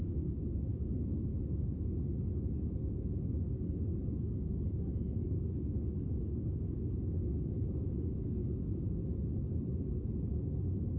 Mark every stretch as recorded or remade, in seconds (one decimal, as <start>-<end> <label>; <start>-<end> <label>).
0.0-1.3 remade; 1.3-4.0 recorded; 4.0-8.4 remade; 8.4-11.0 recorded

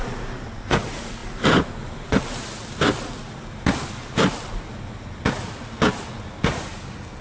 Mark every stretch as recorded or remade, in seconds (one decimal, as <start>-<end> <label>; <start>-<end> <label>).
0.0-7.2 recorded

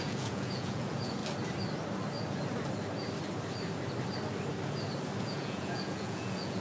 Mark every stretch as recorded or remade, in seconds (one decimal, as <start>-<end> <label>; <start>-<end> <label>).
0.0-1.2 remade; 1.2-5.2 recorded; 5.2-6.6 remade

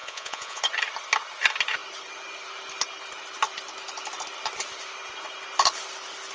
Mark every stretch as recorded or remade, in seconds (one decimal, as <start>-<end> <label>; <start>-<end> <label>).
0.0-0.6 remade; 0.6-6.3 recorded

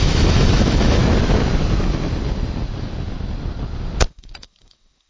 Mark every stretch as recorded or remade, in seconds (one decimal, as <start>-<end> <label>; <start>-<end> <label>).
0.0-1.0 remade; 1.0-4.1 recorded; 4.1-5.1 remade

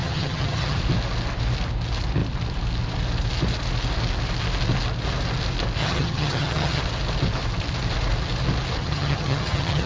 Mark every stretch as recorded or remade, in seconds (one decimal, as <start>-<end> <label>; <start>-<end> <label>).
0.0-0.8 remade; 0.8-5.8 recorded; 5.8-6.8 remade; 6.8-8.8 recorded; 8.8-9.9 remade

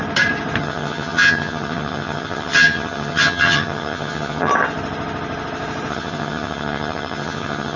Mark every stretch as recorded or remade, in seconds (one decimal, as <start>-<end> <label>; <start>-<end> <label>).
0.0-0.6 recorded; 0.6-4.5 remade; 4.5-5.9 recorded; 5.9-7.8 remade